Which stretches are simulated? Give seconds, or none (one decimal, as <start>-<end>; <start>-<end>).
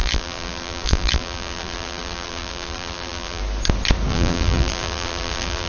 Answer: 0.0-3.4; 4.1-5.7